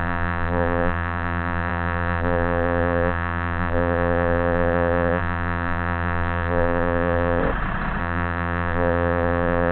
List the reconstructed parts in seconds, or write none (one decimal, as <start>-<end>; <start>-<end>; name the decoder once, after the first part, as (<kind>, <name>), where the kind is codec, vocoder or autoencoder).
0.0-7.4 (vocoder, BigVGAN v2); 8.0-9.7